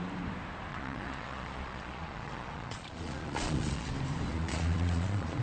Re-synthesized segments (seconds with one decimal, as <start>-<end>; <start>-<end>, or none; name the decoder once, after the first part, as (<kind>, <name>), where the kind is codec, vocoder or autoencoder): 0.7-3.9 (vocoder, Vocos); 4.3-5.4